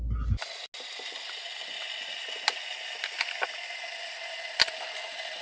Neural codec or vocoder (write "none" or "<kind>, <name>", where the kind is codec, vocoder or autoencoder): none